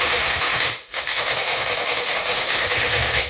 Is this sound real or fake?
fake